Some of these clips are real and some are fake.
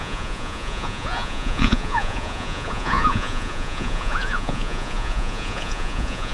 fake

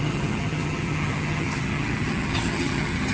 fake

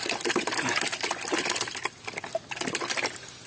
real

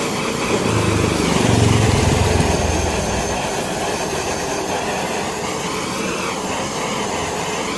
real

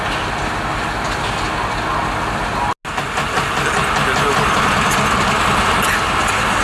real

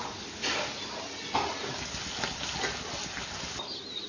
real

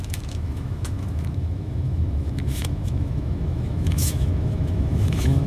fake